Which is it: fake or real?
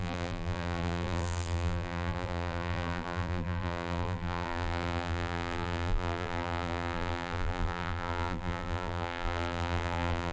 fake